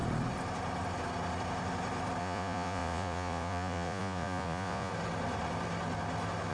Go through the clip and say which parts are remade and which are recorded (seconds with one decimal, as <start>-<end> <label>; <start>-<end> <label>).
0.0-2.2 recorded; 2.2-4.9 remade; 4.9-6.5 recorded